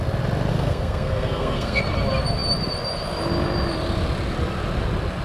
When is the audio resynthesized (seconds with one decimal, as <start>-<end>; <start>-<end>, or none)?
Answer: 0.5-1.8